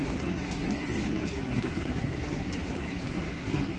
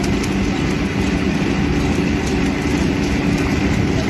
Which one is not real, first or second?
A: first